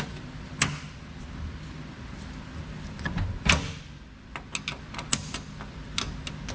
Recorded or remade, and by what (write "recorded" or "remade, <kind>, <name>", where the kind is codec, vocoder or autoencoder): recorded